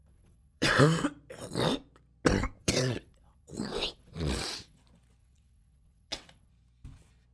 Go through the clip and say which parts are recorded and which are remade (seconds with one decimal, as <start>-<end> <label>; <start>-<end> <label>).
0.0-0.8 remade; 0.8-2.6 recorded; 2.6-4.8 remade; 4.8-5.2 recorded; 5.2-6.5 remade; 6.5-7.3 recorded